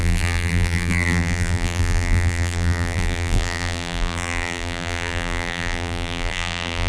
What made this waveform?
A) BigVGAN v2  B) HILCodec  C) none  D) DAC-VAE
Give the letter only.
A